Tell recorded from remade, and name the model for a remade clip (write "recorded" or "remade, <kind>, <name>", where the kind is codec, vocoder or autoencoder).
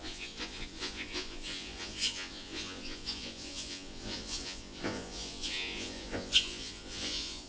remade, vocoder, Vocos